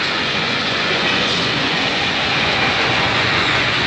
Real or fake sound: fake